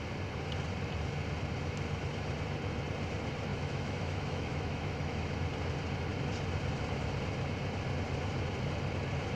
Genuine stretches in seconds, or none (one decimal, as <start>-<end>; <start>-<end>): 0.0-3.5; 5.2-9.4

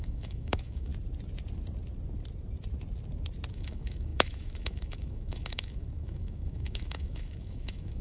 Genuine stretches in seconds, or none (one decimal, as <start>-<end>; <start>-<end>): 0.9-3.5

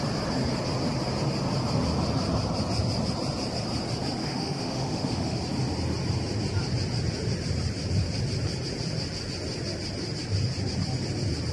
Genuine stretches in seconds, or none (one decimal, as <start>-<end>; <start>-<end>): 0.0-4.2; 5.4-11.5

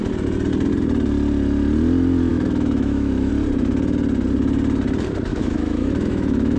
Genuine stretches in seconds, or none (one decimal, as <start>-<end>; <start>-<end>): 0.0-2.3; 3.3-5.3